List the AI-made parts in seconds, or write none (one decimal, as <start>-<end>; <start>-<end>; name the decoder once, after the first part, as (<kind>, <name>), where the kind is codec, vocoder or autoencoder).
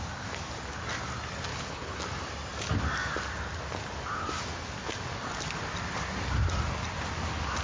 1.5-2.0 (codec, HILCodec)